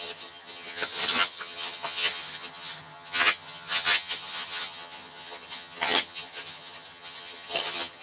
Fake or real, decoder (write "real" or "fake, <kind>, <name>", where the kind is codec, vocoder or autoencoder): fake, vocoder, HiFi-GAN